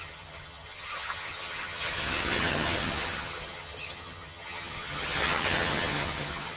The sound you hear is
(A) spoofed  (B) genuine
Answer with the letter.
A